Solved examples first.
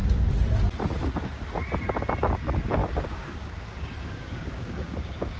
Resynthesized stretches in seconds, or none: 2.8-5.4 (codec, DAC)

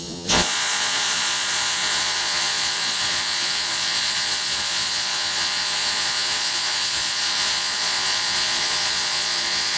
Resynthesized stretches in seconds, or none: 0.0-9.8 (vocoder, Vocos)

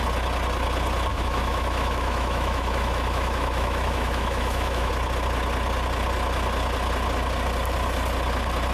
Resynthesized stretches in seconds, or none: 1.1-4.9 (autoencoder, DAC-VAE)